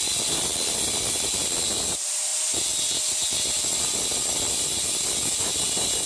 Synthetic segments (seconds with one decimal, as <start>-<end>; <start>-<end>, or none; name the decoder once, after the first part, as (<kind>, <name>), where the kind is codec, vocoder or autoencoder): none